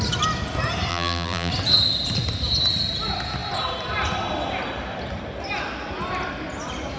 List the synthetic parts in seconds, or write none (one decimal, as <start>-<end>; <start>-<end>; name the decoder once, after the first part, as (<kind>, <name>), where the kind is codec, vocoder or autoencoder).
0.9-1.5 (vocoder, BigVGAN v2)